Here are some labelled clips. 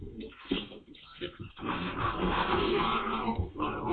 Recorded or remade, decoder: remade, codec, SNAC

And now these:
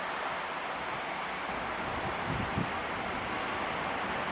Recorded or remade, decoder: recorded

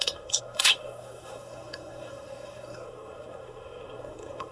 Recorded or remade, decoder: remade, codec, SNAC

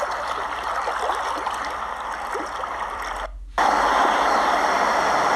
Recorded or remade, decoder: recorded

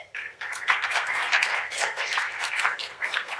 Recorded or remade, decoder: remade, codec, SNAC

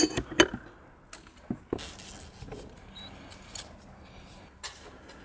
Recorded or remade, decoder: recorded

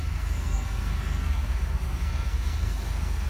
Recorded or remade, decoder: remade, codec, SNAC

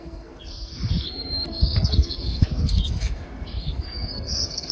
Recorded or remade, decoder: remade, codec, SNAC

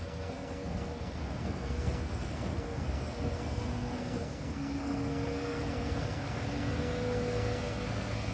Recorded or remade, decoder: remade, codec, SNAC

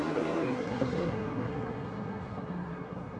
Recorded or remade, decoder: remade, codec, SNAC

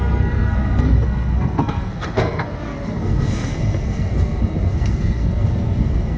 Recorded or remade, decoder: remade, codec, SNAC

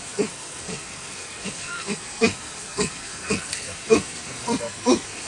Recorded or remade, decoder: remade, codec, SNAC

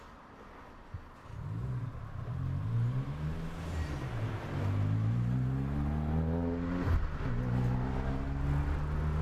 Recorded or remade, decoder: recorded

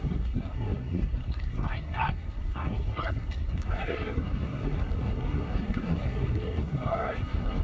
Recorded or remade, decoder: remade, codec, SNAC